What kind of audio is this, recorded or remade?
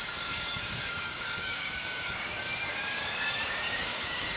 remade